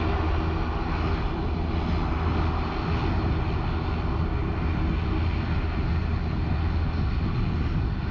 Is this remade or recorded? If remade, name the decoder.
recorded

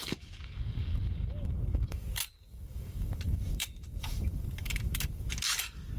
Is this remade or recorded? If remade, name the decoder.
remade, codec, DAC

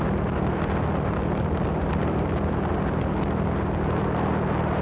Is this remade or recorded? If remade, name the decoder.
recorded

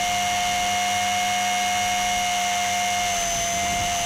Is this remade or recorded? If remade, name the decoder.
recorded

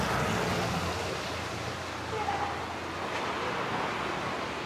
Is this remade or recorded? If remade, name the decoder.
recorded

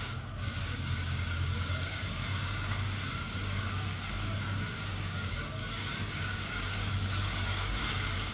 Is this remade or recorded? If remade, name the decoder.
remade, codec, DAC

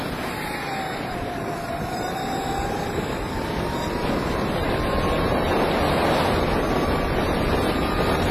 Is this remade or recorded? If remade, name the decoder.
recorded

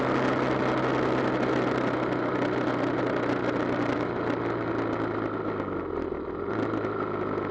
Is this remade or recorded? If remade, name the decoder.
recorded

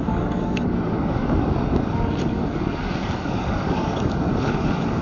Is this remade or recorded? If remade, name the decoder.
remade, codec, DAC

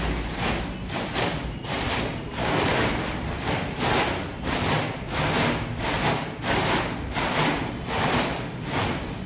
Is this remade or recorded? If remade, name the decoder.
recorded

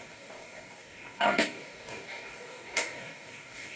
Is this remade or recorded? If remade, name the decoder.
remade, codec, DAC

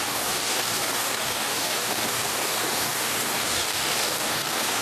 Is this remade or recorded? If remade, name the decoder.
remade, codec, DAC